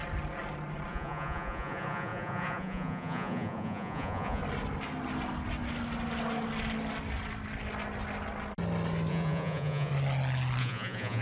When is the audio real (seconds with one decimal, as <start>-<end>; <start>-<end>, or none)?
0.0-0.9; 4.4-9.1; 9.9-10.6